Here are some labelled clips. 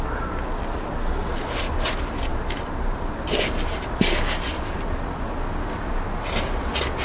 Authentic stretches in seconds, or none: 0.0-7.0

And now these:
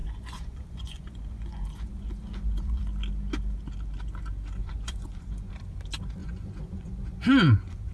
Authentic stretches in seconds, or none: 2.8-4.6; 5.5-6.2

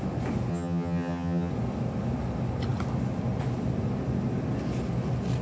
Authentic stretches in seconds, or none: 0.0-0.5; 1.5-5.4

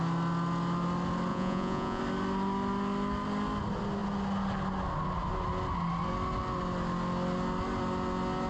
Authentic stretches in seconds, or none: 0.0-1.3; 2.0-8.5

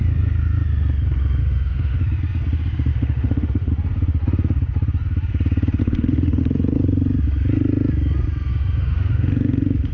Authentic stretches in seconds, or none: 0.0-1.4; 2.0-2.9; 3.7-5.8; 6.4-8.5

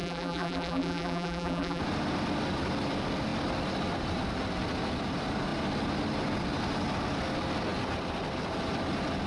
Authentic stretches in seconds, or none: 1.8-9.3